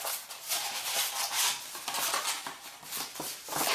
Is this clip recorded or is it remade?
remade